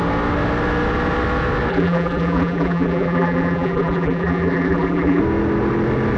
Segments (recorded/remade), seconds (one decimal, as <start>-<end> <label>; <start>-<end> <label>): 0.0-1.7 recorded; 1.7-5.2 remade; 5.2-6.2 recorded